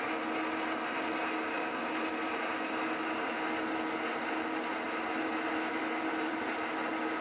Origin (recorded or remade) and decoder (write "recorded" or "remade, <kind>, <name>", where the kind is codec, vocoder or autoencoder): recorded